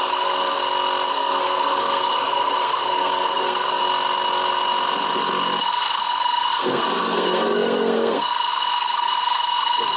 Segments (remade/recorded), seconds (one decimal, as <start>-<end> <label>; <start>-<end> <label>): 0.0-0.6 remade; 0.6-1.1 recorded; 1.1-3.8 remade; 3.8-5.6 recorded; 5.6-10.0 remade